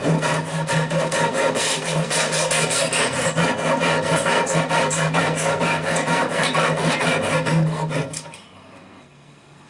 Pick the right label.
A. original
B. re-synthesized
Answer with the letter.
B